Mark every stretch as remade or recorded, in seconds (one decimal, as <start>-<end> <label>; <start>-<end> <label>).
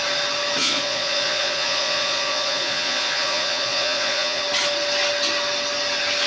0.0-0.6 recorded; 0.6-4.4 remade; 4.4-6.3 recorded